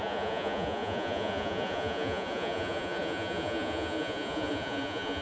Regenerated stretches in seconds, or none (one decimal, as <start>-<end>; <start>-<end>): 0.0-5.2

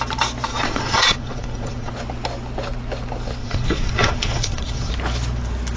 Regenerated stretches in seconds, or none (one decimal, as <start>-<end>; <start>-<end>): 0.5-1.9; 3.4-4.9